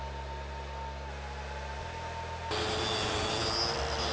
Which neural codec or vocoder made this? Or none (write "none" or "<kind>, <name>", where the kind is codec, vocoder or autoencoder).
none